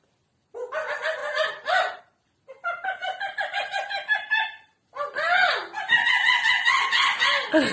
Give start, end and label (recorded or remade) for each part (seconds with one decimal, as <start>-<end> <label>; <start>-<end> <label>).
0.0-1.2 recorded; 1.2-2.0 remade; 2.0-7.7 recorded